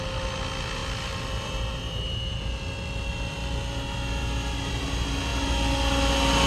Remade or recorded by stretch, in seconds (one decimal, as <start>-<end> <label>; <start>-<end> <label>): 0.0-6.5 recorded